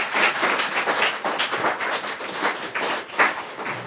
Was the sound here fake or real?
real